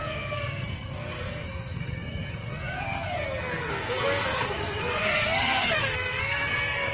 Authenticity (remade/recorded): remade